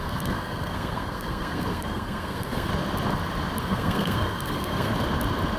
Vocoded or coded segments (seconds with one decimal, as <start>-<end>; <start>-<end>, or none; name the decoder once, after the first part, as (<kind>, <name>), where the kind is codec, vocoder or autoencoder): 0.0-2.7 (codec, SNAC); 3.6-4.9